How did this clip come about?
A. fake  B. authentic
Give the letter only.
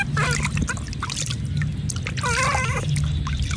B